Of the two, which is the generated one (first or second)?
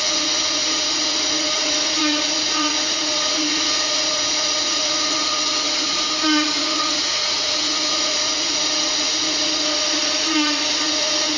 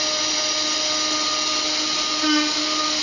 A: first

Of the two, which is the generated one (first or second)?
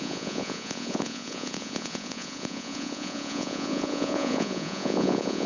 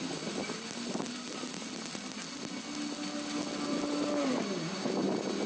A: first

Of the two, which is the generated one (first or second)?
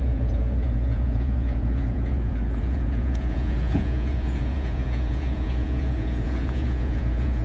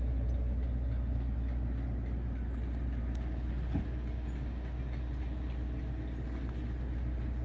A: first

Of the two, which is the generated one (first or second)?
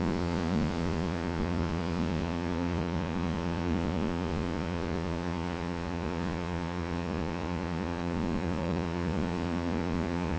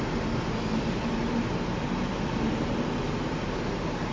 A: first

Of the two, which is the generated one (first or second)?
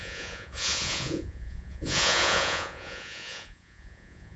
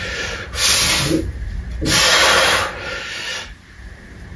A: first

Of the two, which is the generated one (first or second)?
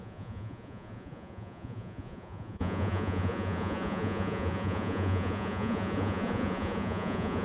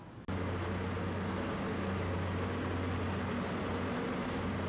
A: first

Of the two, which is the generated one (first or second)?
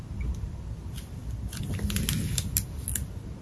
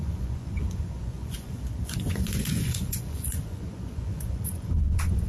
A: second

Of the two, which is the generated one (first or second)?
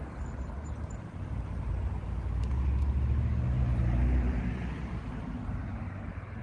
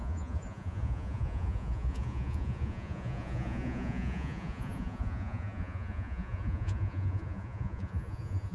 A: second